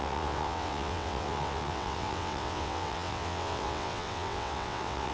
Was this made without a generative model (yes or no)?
no